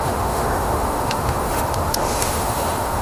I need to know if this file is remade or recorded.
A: remade